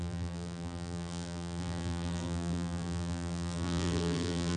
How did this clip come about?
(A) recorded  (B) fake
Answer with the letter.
B